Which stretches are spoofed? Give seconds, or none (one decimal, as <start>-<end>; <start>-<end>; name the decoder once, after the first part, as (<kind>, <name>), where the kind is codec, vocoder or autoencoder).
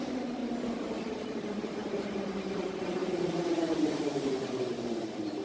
0.0-0.4 (vocoder, BigVGAN v2); 1.1-5.4